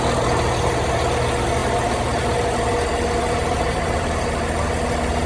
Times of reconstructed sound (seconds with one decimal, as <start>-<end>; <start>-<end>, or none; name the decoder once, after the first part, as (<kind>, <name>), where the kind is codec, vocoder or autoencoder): none